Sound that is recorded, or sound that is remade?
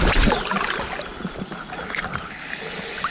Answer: recorded